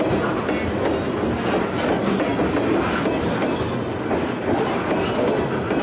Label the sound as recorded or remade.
recorded